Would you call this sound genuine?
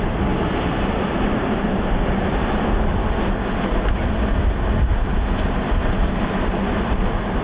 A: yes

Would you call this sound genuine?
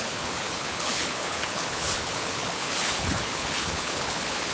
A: no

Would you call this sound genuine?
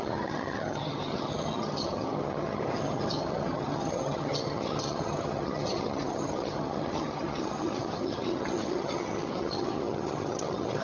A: no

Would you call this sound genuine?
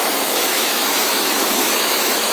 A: no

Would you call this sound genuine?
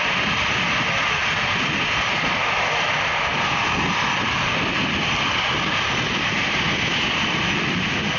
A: yes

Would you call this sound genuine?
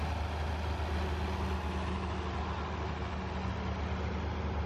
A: yes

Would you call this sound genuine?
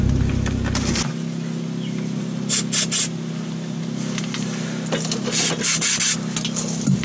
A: yes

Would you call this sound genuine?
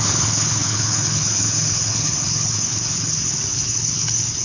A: no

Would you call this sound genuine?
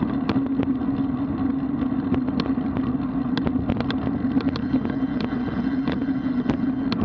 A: yes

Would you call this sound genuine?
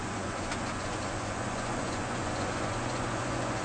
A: no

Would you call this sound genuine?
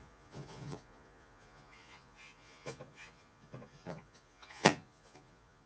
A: no